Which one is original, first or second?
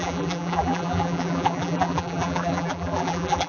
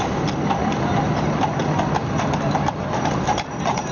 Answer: second